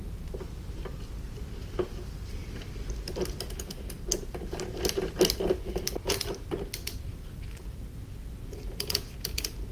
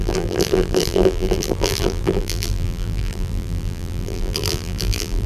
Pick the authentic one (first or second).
first